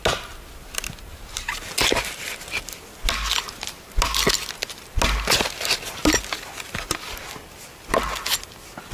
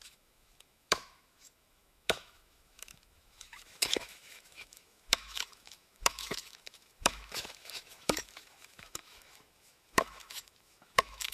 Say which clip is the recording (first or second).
first